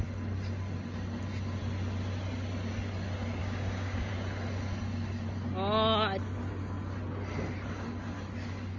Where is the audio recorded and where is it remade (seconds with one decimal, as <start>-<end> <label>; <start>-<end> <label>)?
0.0-3.4 recorded; 3.4-4.1 remade; 4.1-8.8 recorded